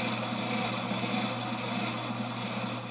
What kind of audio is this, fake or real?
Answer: real